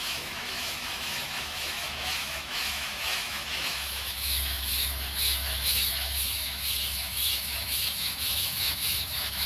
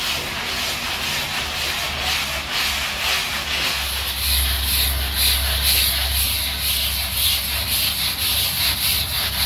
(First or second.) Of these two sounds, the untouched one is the second